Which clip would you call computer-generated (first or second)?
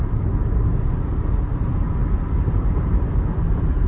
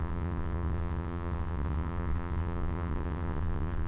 second